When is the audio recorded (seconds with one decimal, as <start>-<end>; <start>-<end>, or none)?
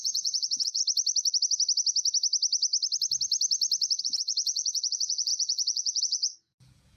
0.8-4.0